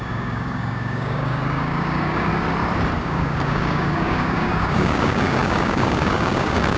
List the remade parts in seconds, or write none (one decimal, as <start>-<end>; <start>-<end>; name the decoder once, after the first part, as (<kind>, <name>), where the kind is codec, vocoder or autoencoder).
0.0-2.3 (codec, DAC); 3.0-6.8